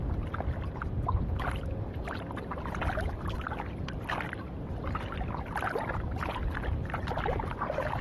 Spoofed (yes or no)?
no